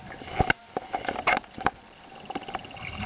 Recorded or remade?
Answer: recorded